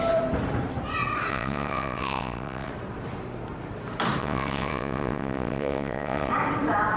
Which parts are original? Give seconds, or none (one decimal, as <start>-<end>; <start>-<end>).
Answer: 0.0-1.3; 2.7-4.2; 6.3-7.0